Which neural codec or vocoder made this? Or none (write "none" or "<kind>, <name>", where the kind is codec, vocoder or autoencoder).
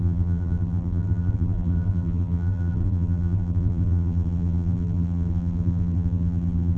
vocoder, BigVGAN v2